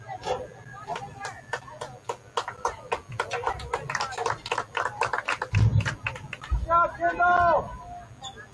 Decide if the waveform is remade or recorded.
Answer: recorded